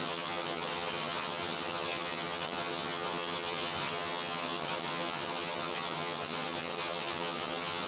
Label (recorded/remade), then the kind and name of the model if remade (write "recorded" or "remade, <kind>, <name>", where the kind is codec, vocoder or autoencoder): remade, vocoder, HiFi-GAN